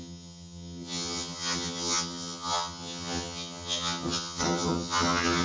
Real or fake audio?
fake